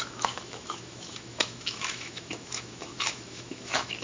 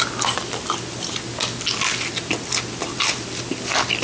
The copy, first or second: first